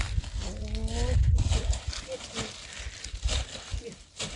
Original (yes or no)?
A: yes